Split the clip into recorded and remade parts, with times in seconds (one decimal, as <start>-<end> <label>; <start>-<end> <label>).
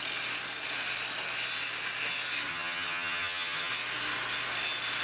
0.0-2.5 recorded; 2.5-3.7 remade; 3.7-5.0 recorded